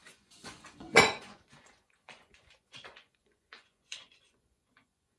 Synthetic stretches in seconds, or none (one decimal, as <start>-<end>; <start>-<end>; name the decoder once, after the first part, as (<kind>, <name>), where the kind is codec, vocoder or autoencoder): 0.0-5.2 (vocoder, Vocos)